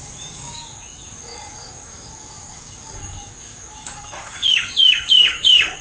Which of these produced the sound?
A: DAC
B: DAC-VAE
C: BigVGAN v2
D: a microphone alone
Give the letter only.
A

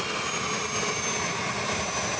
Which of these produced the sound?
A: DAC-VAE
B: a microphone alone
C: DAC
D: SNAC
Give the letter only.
B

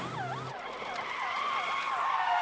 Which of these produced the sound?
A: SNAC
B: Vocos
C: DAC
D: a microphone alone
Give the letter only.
D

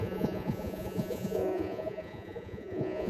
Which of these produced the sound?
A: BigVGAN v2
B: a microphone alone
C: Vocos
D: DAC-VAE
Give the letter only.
C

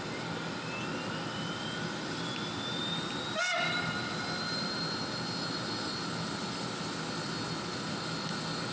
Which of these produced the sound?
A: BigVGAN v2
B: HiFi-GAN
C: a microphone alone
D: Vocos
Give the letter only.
C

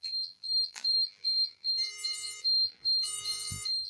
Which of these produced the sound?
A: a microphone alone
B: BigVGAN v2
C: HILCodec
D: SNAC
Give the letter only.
B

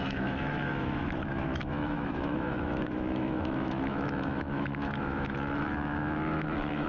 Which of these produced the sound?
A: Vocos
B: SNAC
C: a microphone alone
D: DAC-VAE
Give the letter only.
D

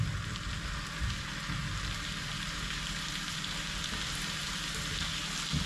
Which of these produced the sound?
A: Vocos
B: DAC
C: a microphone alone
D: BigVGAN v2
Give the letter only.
C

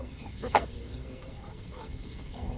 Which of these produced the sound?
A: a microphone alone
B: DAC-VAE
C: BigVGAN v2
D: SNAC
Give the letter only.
D